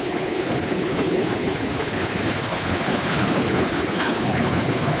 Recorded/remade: remade